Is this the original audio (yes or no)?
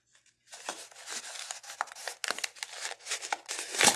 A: yes